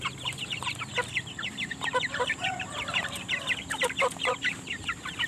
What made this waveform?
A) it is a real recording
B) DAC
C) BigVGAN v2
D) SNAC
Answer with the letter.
C